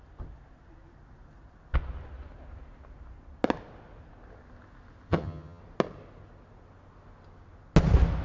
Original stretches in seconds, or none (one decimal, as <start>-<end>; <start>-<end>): 0.0-5.1; 5.6-8.2